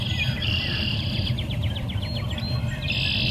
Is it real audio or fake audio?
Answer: real